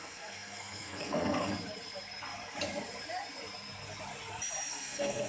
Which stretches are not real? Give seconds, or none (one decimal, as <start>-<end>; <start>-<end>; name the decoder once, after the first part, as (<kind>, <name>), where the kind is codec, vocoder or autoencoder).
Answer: 0.0-1.5 (codec, SNAC); 4.7-5.3